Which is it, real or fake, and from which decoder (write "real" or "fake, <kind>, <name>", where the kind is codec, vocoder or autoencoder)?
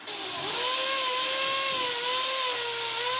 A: real